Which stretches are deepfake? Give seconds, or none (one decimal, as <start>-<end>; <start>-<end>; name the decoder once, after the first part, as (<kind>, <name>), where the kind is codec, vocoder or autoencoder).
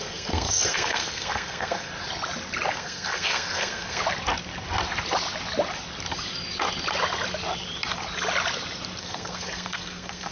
0.0-1.9 (codec, SNAC); 2.7-4.0; 9.0-10.3